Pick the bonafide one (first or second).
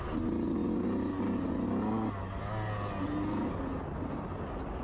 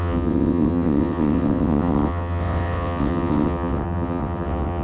first